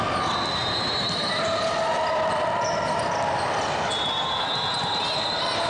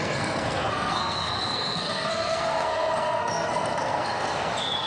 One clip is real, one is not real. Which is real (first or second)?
first